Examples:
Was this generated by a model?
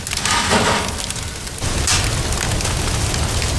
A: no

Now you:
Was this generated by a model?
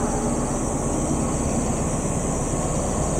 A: no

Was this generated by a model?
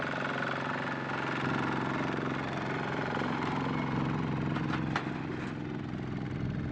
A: no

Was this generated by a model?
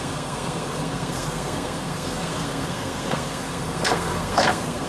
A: yes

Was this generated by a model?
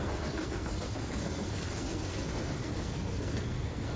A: yes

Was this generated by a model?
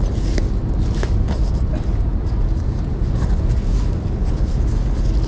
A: no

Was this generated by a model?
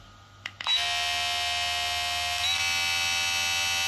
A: no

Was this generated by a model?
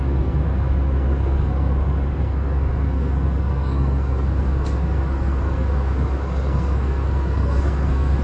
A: yes